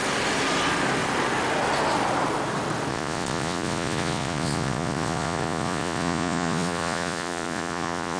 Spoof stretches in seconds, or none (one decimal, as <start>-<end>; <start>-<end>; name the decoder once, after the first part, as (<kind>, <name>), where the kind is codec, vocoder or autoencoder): 2.9-8.2 (vocoder, Vocos)